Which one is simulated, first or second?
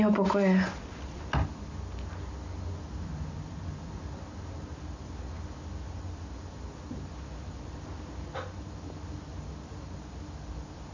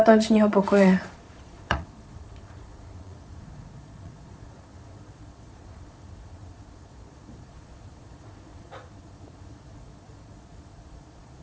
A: second